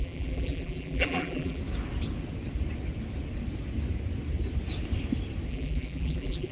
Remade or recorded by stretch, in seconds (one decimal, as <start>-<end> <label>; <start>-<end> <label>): 0.0-1.6 remade; 1.6-5.5 recorded; 5.5-6.5 remade